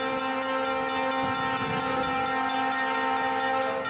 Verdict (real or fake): real